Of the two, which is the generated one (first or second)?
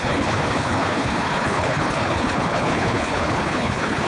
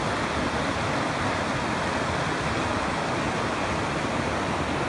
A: first